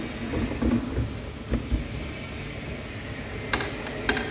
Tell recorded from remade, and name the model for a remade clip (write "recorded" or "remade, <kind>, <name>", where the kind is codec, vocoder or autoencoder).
recorded